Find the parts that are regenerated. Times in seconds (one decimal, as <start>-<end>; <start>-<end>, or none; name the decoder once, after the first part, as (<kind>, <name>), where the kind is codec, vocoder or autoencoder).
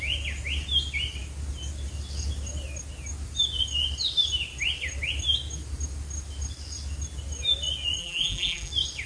8.0-8.7 (vocoder, BigVGAN v2)